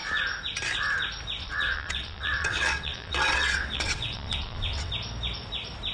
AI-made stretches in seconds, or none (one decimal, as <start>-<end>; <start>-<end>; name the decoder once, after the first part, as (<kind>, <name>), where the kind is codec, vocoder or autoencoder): 1.4-4.9 (vocoder, WaveNeXt)